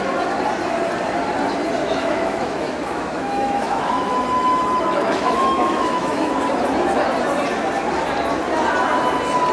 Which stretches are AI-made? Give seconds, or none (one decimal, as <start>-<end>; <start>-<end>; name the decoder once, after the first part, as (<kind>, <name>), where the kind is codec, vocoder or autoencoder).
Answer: 1.8-6.3 (autoencoder, DAC-VAE)